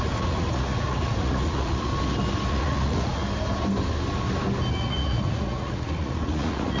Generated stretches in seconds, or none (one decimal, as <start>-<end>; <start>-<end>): 0.0-1.9; 2.5-3.2; 4.7-6.8

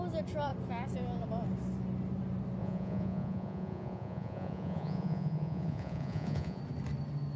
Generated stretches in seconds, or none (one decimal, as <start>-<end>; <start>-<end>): 2.6-6.6

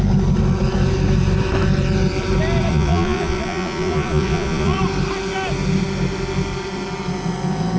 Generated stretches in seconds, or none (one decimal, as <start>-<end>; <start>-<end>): 2.7-4.8